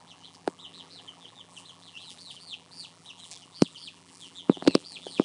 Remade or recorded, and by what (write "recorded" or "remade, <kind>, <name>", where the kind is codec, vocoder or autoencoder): remade, vocoder, BigVGAN v2